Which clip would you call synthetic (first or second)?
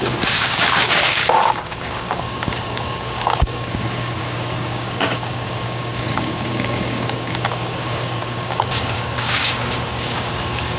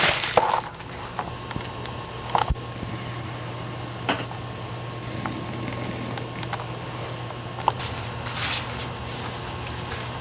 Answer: first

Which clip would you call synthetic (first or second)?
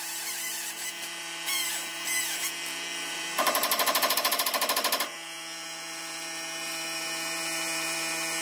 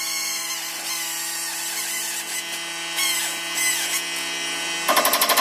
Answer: first